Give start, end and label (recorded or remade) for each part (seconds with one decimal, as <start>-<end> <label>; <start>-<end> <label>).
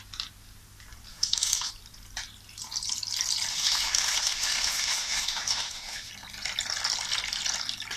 0.0-1.1 recorded; 1.1-1.7 remade; 1.7-3.5 recorded; 3.5-6.1 remade; 6.1-8.0 recorded